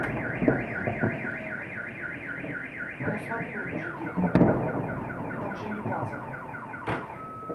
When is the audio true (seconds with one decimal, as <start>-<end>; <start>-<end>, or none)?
0.0-7.5